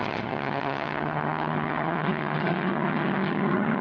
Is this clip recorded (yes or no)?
no